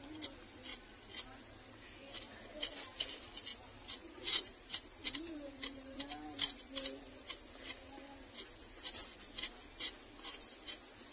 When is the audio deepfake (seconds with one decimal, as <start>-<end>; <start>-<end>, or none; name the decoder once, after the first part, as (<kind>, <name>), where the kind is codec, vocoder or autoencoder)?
3.5-6.0 (vocoder, BigVGAN v2)